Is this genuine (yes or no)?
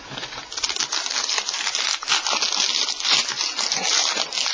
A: yes